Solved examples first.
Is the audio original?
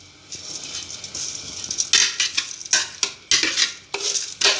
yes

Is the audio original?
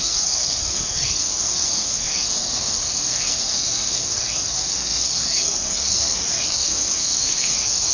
no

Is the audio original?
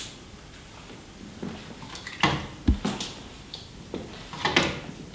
yes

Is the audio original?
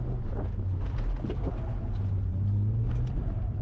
yes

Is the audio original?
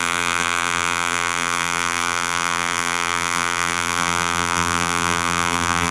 no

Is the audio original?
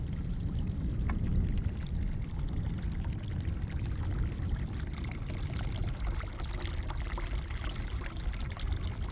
yes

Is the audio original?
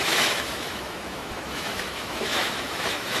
no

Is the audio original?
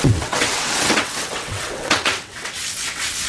no